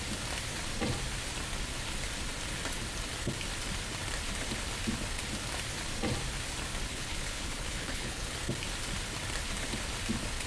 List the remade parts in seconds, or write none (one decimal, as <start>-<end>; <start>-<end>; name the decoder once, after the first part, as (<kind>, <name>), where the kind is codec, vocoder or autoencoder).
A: 6.9-8.3 (codec, HILCodec)